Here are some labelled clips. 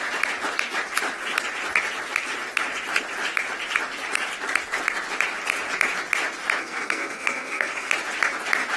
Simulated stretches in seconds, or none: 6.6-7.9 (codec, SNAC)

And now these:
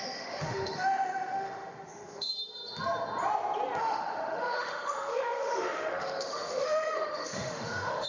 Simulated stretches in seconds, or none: 0.0-2.3 (autoencoder, DAC-VAE); 3.8-8.1

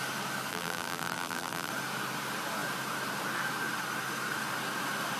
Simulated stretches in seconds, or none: 0.5-1.7 (vocoder, BigVGAN v2)

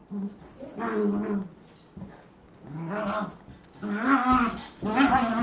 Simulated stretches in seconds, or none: none

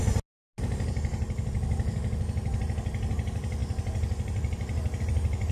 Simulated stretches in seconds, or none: none

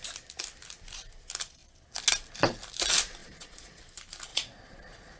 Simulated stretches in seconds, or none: 3.2-3.8 (vocoder, Vocos); 4.3-5.2